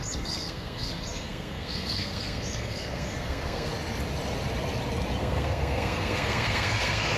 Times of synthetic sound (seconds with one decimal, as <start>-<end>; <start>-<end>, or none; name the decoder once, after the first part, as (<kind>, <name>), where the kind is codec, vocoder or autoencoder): 0.0-3.7 (codec, SNAC); 5.2-7.2